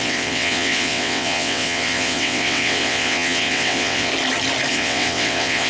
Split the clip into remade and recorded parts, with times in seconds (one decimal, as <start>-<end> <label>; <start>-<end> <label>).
0.0-4.1 remade; 4.1-4.7 recorded; 4.7-5.7 remade